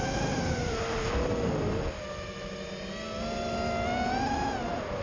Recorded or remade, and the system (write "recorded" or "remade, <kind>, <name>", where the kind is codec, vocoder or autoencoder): recorded